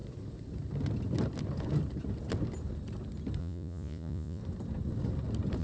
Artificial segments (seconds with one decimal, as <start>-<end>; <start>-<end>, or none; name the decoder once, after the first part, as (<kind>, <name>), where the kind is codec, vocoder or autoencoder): 3.4-4.4 (vocoder, Vocos)